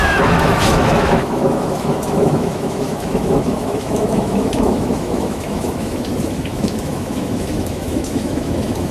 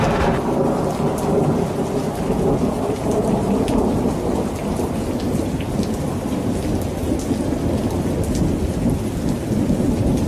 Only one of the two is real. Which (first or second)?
second